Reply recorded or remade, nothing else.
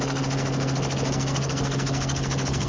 remade